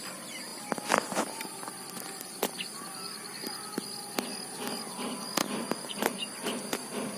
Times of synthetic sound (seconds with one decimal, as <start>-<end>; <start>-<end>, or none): 5.4-6.4